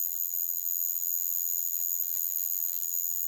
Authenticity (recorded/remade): remade